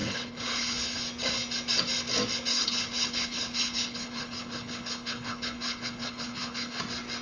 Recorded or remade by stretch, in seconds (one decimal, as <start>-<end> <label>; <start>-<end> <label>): 0.0-1.0 remade; 1.0-2.5 recorded; 2.5-6.8 remade; 6.8-7.2 recorded